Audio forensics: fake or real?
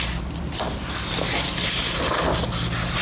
real